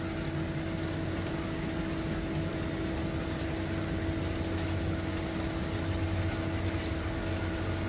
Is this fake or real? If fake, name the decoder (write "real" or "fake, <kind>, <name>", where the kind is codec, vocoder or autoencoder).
real